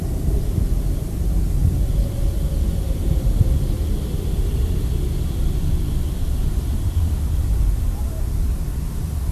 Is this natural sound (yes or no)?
yes